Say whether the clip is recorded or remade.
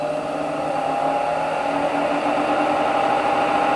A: recorded